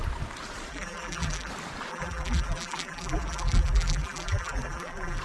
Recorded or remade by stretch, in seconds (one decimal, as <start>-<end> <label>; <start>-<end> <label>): 0.0-0.7 recorded; 0.7-1.5 remade; 1.5-1.9 recorded; 1.9-5.2 remade